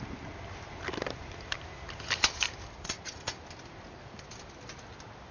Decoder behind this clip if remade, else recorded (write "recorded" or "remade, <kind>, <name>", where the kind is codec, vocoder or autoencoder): recorded